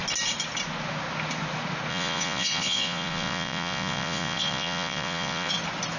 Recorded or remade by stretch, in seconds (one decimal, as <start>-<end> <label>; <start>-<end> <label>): 0.0-1.9 recorded; 1.9-5.5 remade; 5.5-6.0 recorded